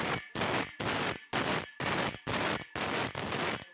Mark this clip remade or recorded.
recorded